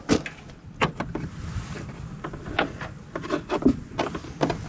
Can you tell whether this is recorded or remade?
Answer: recorded